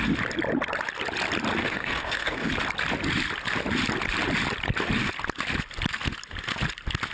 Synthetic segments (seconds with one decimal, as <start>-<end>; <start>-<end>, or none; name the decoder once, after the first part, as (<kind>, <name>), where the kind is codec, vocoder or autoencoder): 1.6-2.5 (codec, SNAC)